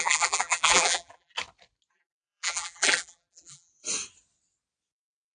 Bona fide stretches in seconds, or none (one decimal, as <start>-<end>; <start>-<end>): 1.3-1.9; 3.7-5.3